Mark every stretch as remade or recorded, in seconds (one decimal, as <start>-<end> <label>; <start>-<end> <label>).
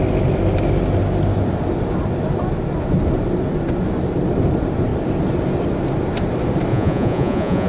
0.0-6.7 recorded; 6.7-7.7 remade